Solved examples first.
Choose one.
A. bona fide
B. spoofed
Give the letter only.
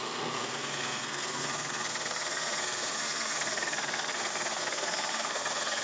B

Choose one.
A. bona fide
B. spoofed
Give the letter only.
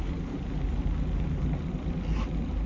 A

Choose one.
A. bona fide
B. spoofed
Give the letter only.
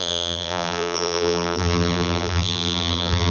B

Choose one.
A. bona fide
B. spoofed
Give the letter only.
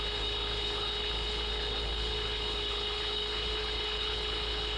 B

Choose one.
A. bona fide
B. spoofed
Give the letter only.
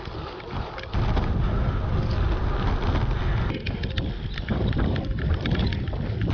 A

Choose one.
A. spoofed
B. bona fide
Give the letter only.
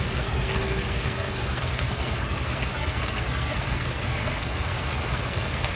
A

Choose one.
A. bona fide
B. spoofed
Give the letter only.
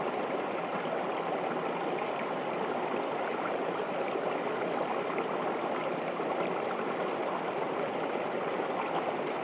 A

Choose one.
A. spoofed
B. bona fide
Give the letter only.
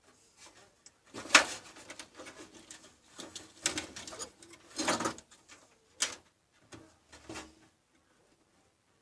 B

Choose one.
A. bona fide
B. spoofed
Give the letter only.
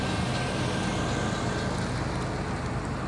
A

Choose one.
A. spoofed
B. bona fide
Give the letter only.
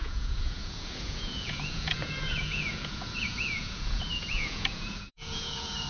A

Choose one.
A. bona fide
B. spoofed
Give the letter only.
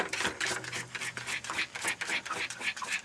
A